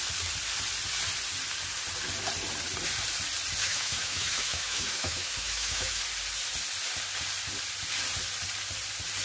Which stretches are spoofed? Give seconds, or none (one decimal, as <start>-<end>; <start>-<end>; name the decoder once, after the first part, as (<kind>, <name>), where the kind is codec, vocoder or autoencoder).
3.6-6.0 (autoencoder, DAC-VAE)